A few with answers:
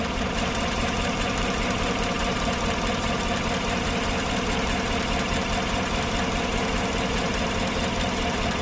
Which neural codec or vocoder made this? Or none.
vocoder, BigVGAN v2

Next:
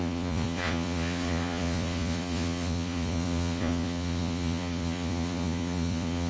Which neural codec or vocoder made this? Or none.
vocoder, Vocos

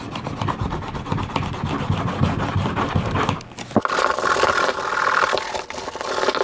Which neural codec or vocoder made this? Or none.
none